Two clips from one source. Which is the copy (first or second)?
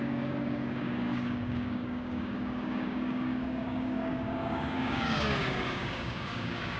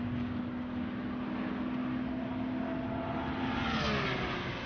first